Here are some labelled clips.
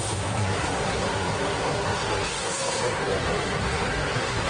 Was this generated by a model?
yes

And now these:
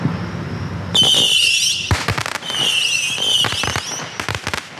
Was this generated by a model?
no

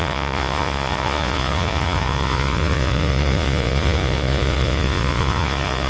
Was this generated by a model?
yes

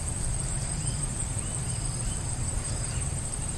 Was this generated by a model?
yes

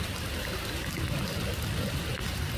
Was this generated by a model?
no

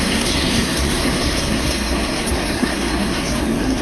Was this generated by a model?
yes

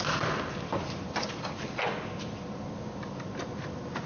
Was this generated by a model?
no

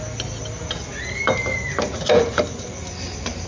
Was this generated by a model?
no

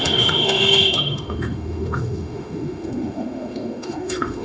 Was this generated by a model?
yes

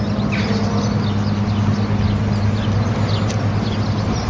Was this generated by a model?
no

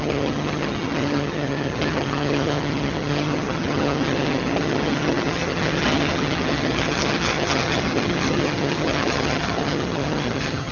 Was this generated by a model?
yes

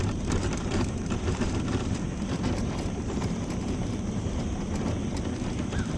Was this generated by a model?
yes